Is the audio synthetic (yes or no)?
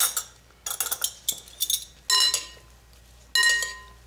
no